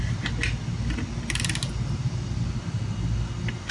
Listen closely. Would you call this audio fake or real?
real